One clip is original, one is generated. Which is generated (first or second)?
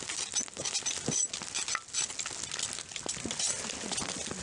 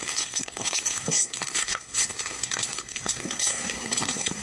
second